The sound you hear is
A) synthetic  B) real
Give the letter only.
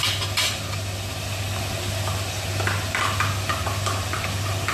B